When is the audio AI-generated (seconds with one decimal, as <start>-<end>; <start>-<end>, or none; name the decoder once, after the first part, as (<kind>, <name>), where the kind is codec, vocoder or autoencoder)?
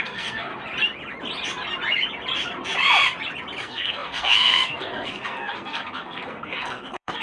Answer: 0.0-0.5 (codec, SNAC); 3.6-7.2